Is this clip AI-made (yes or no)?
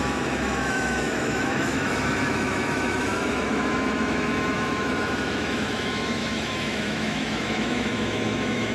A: yes